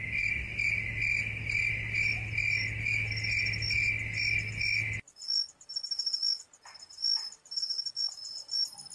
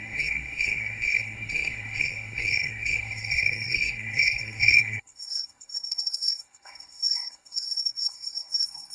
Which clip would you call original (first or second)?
first